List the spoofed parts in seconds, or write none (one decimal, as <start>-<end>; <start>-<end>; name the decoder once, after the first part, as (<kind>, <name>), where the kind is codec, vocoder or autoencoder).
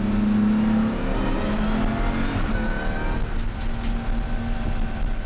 none